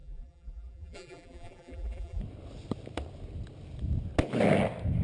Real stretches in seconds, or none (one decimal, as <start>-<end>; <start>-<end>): 2.2-5.0